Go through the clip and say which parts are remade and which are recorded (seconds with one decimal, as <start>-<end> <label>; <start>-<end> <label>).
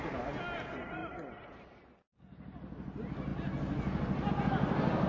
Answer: 0.0-5.1 recorded